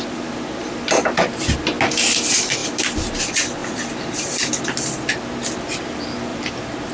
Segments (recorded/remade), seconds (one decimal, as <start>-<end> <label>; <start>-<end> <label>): 0.0-2.6 recorded; 2.6-3.2 remade; 3.2-3.6 recorded; 3.6-4.5 remade; 4.5-6.3 recorded; 6.3-6.9 remade

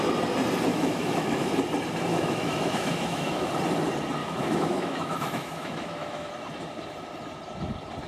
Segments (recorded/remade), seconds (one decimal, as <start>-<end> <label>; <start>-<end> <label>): 0.0-0.7 recorded; 0.7-1.5 remade; 1.5-2.1 recorded; 2.1-3.5 remade; 3.5-4.2 recorded; 4.2-6.3 remade; 6.3-8.1 recorded

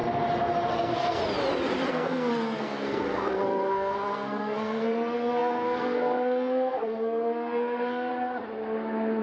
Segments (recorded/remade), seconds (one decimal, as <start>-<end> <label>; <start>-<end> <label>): 0.0-0.7 recorded; 0.7-1.2 remade; 1.2-1.9 recorded; 1.9-8.1 remade; 8.1-9.2 recorded

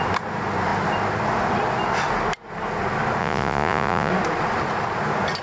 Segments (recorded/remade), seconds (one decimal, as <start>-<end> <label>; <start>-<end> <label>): 0.0-3.2 recorded; 3.2-4.1 remade; 4.1-5.4 recorded

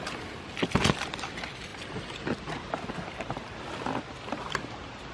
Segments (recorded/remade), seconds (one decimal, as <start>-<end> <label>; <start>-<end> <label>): 0.0-5.1 recorded

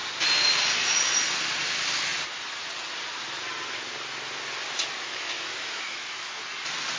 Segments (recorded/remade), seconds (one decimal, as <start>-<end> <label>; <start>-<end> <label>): 0.0-5.0 recorded; 5.0-6.3 remade; 6.3-7.0 recorded

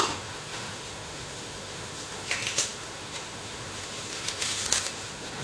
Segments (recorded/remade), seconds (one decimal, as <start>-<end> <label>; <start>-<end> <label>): 0.0-5.4 remade

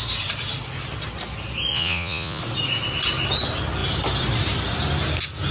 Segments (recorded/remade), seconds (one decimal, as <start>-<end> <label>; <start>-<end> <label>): 0.0-1.7 recorded; 1.7-2.4 remade; 2.4-5.5 recorded